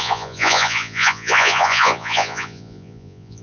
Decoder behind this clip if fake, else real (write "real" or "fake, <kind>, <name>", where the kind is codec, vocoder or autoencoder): fake, vocoder, Vocos